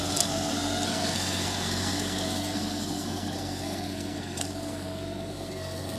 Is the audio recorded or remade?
remade